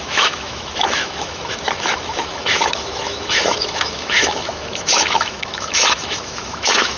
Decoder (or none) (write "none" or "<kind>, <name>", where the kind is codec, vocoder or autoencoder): autoencoder, DAC-VAE